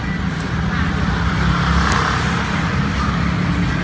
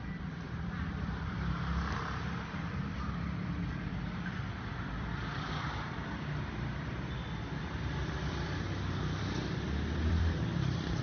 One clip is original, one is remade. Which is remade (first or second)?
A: second